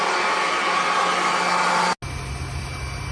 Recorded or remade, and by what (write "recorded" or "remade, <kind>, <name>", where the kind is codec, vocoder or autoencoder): recorded